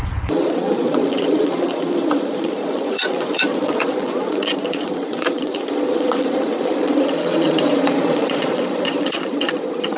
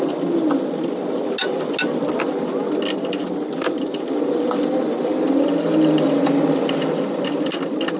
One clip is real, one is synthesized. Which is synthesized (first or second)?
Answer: first